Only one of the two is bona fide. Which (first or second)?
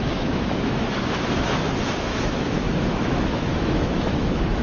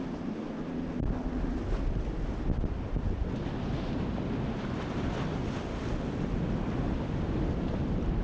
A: second